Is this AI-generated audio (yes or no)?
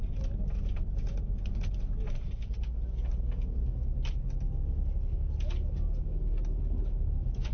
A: no